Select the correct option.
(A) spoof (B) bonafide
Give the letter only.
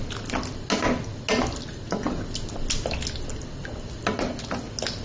B